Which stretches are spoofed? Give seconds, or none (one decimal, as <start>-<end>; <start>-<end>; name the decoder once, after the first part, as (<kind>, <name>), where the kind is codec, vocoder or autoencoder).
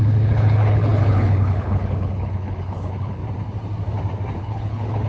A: 0.0-3.2 (codec, HILCodec); 4.4-5.1